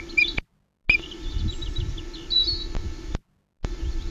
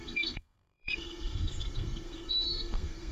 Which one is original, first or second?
first